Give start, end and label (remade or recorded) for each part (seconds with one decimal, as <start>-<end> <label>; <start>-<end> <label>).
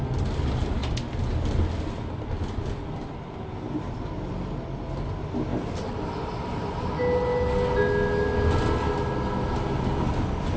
0.0-10.6 recorded